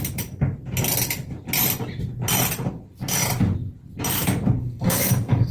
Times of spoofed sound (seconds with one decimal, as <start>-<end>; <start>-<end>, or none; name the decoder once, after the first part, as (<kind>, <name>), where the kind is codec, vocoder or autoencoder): 4.6-5.5 (codec, SNAC)